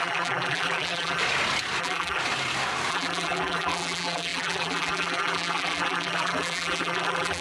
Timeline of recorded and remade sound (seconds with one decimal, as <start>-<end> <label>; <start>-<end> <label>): 0.0-1.2 remade; 1.2-1.8 recorded; 1.8-2.2 remade; 2.2-2.9 recorded; 2.9-7.4 remade

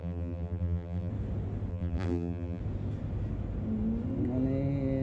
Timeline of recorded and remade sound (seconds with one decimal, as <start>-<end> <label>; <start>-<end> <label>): 0.0-1.1 remade; 1.1-1.7 recorded; 1.7-2.6 remade; 2.6-5.0 recorded

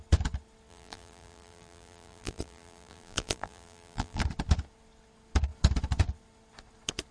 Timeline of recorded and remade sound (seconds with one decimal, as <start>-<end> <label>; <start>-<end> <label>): 0.0-0.7 recorded; 0.7-4.2 remade; 4.2-7.1 recorded

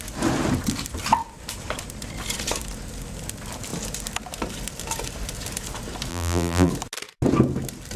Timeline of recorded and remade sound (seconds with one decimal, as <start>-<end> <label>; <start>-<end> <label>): 0.0-6.1 recorded; 6.1-6.7 remade; 6.7-8.0 recorded